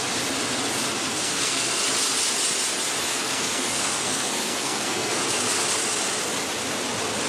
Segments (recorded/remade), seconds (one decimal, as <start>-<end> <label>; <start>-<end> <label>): 0.0-1.1 recorded; 1.1-1.8 remade; 1.8-3.1 recorded; 3.1-5.2 remade; 5.2-7.3 recorded